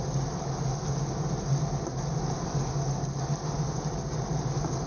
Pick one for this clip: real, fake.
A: real